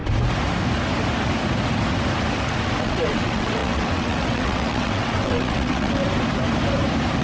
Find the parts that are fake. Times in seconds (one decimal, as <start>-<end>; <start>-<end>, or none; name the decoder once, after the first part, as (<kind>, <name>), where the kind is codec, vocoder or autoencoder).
2.8-6.0 (vocoder, WaveNeXt)